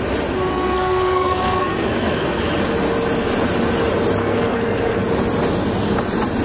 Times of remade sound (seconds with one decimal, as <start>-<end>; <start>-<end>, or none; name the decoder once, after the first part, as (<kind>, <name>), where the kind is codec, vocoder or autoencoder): 0.5-2.4 (codec, SNAC); 4.2-5.0